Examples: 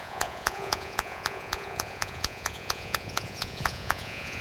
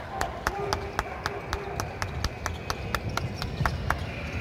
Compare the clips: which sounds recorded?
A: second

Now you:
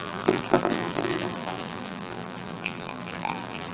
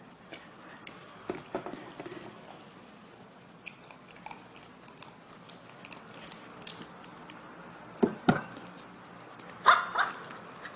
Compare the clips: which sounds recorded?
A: second